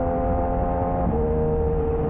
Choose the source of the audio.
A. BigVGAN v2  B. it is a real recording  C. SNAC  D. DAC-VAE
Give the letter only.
B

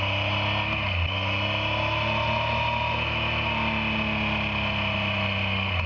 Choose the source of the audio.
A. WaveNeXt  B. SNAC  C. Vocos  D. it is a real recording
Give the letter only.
D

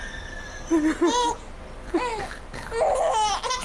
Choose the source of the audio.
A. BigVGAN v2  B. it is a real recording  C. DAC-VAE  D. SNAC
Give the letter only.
B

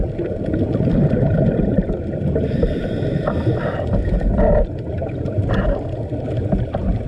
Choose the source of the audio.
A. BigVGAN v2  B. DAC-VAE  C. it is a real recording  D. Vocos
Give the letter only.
A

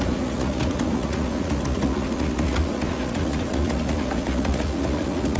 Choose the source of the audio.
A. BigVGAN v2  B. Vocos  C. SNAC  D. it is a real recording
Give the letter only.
B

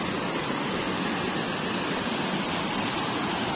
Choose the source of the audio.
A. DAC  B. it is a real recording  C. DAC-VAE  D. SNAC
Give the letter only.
B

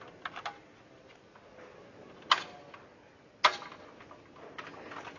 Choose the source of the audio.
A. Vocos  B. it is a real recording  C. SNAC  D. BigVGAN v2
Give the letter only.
B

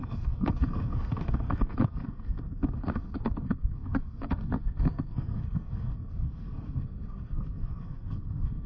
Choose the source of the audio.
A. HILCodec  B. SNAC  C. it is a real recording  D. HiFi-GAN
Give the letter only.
B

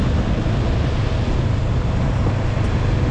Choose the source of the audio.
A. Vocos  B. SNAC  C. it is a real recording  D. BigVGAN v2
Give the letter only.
C